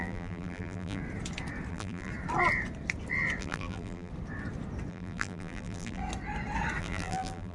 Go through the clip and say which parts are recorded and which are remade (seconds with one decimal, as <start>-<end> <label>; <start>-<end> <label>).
0.0-1.0 remade; 1.0-1.7 recorded; 1.7-2.1 remade; 2.1-3.4 recorded; 3.4-4.1 remade; 4.1-4.9 recorded; 4.9-6.0 remade; 6.0-6.8 recorded; 6.8-7.5 remade